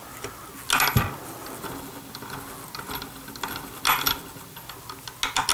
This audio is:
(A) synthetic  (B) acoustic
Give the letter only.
B